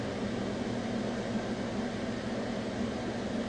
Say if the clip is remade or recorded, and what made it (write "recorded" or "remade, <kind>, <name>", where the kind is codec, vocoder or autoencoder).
recorded